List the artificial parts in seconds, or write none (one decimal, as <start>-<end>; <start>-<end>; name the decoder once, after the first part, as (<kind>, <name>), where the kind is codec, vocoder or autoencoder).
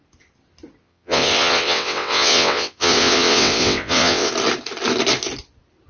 0.8-4.3 (vocoder, WaveNeXt)